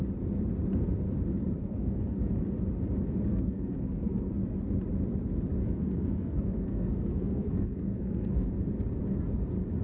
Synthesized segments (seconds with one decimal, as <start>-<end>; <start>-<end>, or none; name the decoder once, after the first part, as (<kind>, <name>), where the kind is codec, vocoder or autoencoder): 1.6-2.3 (codec, SNAC); 3.3-4.3; 5.6-8.5